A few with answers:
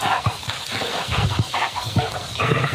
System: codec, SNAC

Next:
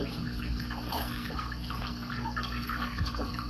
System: codec, SNAC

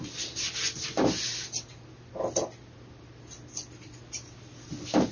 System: none